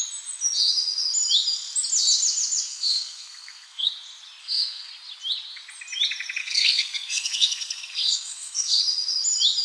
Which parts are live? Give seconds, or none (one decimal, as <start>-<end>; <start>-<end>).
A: 0.0-2.7; 3.9-4.4; 4.9-6.4; 8.8-9.6